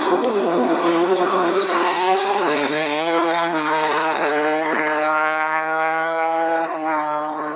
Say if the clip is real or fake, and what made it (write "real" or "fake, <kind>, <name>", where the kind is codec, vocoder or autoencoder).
fake, codec, SNAC